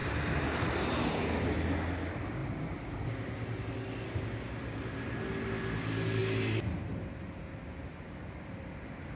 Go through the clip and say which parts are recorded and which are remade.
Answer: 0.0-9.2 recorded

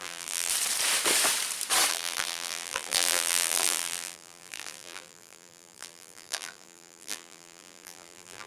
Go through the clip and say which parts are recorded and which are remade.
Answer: 0.0-0.5 remade; 0.5-1.9 recorded; 1.9-8.5 remade

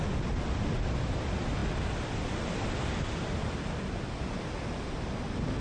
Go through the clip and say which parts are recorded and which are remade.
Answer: 0.0-5.6 recorded

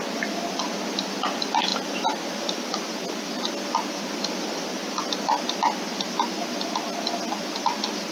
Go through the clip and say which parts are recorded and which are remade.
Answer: 0.0-8.1 recorded